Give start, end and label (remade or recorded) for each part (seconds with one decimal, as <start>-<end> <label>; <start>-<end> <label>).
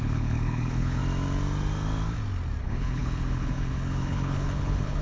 0.0-1.0 remade; 1.0-2.6 recorded; 2.6-5.0 remade